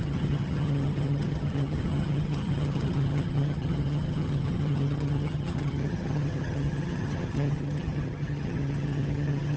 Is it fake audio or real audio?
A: fake